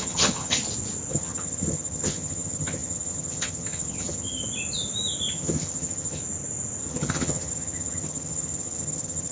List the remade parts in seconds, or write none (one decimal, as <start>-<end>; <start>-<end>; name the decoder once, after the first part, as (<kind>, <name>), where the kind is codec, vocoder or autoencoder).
0.0-0.6 (vocoder, HiFi-GAN); 1.1-4.4; 5.3-6.2; 6.8-9.3